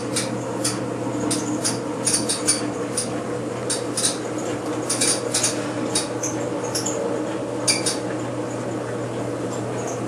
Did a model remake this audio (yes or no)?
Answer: no